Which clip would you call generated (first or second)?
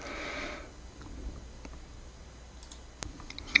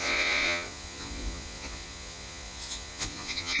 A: second